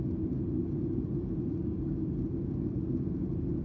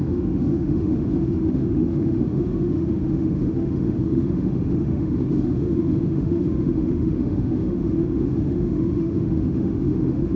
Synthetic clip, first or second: second